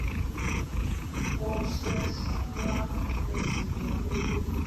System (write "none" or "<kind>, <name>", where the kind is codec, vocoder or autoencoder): vocoder, Vocos